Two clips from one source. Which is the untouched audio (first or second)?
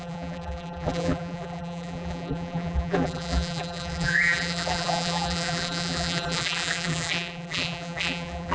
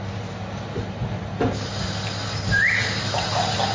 second